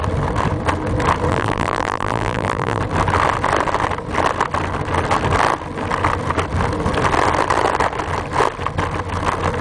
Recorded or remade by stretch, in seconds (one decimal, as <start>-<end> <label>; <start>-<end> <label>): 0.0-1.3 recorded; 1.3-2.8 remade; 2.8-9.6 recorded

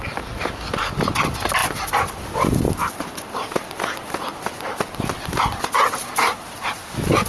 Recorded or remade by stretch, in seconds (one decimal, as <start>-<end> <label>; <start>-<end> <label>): 0.0-7.3 recorded

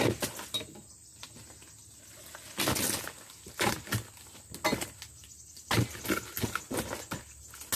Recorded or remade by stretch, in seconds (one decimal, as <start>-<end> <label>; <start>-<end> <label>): 0.0-5.2 recorded; 5.2-6.0 remade; 6.0-7.7 recorded

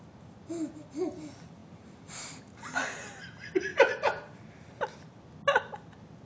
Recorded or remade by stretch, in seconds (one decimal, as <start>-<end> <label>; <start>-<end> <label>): 0.0-1.6 recorded; 1.6-2.4 remade; 2.4-3.7 recorded; 3.7-5.2 remade; 5.2-6.3 recorded